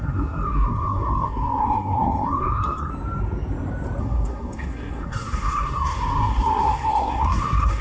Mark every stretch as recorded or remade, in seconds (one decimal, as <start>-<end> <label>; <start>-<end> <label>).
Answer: 0.0-2.9 remade; 2.9-4.0 recorded; 4.0-7.8 remade